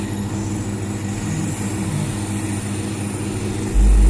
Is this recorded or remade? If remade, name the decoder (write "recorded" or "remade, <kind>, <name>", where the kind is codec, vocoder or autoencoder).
recorded